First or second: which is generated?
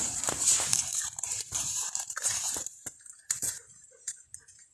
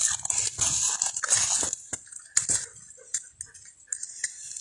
first